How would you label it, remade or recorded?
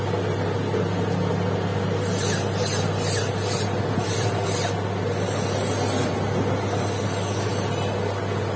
recorded